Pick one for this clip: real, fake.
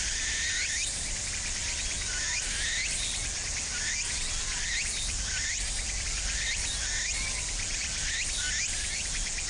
real